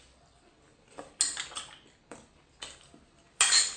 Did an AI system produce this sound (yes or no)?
no